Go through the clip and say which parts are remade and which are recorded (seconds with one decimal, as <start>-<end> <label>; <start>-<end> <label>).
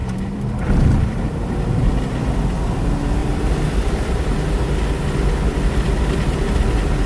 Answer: 0.0-1.9 remade; 1.9-3.2 recorded; 3.2-4.2 remade; 4.2-7.1 recorded